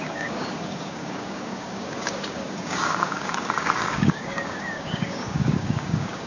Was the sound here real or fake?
fake